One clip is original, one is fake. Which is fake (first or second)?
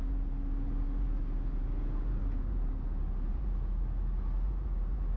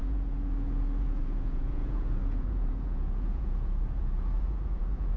second